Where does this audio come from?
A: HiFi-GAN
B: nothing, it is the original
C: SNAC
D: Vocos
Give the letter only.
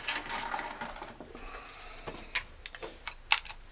B